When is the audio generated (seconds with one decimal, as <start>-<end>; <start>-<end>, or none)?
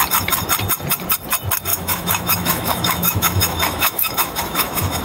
1.7-5.0